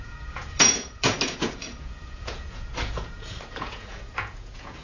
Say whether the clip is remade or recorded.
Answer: remade